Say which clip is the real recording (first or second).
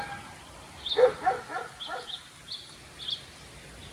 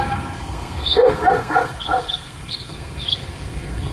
first